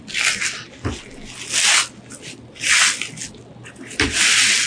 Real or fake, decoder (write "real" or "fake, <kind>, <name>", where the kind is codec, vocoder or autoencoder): real